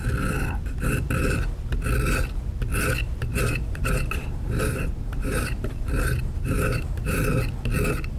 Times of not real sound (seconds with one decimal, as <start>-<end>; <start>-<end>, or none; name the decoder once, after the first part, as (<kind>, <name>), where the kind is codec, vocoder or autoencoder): 3.3-7.2 (vocoder, BigVGAN v2)